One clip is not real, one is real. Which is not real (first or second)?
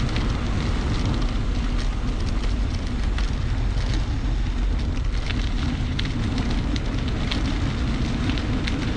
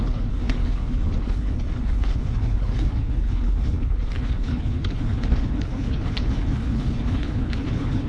second